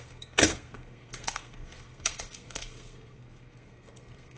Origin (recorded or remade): remade